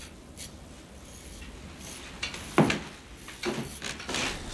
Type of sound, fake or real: real